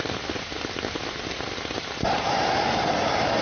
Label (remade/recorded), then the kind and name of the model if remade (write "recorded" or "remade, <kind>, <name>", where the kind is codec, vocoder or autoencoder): recorded